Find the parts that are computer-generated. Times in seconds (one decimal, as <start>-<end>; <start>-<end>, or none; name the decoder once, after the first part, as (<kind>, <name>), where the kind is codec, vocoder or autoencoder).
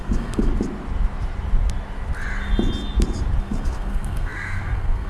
0.0-0.5 (codec, SNAC); 3.4-5.1